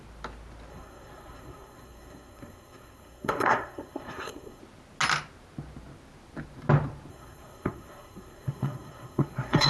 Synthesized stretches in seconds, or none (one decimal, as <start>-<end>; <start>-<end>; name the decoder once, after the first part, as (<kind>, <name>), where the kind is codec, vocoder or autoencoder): 0.7-4.6 (codec, SNAC); 7.1-9.7